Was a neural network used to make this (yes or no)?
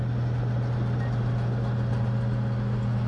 no